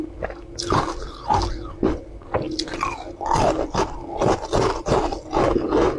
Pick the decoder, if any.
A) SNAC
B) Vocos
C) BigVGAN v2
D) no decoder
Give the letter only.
D